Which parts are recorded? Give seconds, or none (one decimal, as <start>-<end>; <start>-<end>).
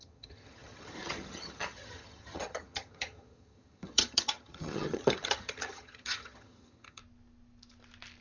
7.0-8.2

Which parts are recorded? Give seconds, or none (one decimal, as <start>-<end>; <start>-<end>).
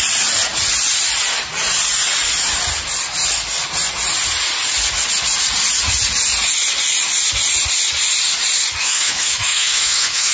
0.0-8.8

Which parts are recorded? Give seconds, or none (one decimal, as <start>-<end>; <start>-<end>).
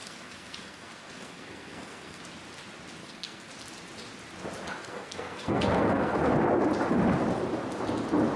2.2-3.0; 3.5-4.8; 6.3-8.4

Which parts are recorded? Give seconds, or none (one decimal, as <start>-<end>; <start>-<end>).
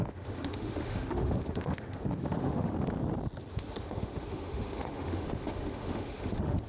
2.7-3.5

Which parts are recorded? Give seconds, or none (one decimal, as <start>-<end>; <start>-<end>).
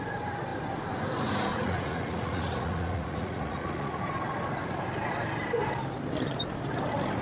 0.0-1.5; 4.0-7.2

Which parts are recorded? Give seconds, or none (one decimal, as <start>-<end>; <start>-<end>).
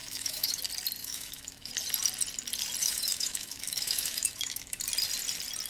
0.6-1.0; 1.7-2.8; 4.8-5.7